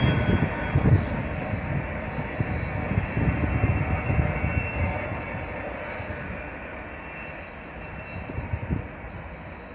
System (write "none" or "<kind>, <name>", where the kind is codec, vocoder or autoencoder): none